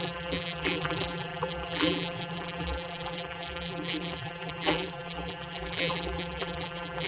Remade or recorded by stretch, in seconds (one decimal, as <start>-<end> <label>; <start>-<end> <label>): 0.0-7.1 remade